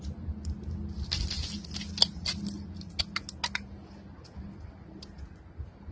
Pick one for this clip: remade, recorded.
recorded